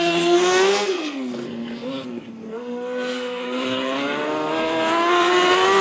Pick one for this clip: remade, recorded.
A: remade